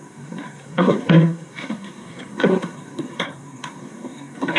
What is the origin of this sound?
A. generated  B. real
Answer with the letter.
A